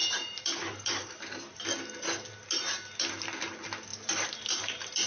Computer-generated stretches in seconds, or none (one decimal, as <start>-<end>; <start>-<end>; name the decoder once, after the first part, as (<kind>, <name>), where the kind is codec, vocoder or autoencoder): 0.0-1.6 (vocoder, BigVGAN v2); 3.9-5.1

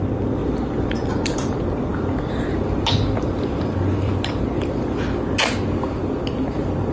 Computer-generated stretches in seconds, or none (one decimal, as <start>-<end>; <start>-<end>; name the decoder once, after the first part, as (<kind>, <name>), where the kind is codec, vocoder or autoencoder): 0.4-1.1 (vocoder, BigVGAN v2); 1.9-6.0

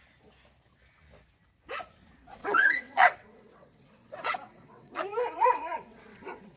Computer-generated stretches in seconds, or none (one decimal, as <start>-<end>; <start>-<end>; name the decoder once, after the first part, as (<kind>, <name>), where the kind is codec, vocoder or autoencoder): 2.4-6.6 (vocoder, WaveNeXt)